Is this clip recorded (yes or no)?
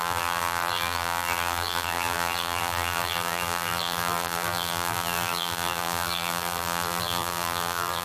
no